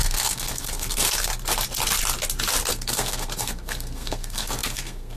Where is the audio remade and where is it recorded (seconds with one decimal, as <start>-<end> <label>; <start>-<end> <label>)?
0.0-1.3 remade; 1.3-2.7 recorded; 2.7-5.2 remade